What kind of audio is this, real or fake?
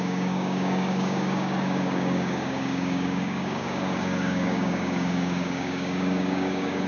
fake